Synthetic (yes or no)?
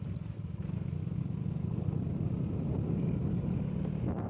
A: no